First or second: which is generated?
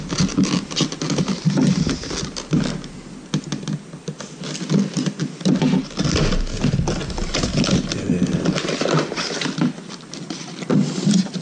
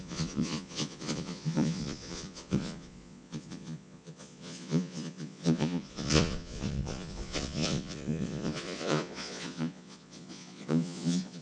second